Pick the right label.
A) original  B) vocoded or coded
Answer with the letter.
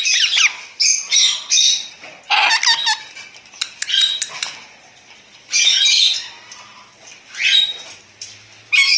A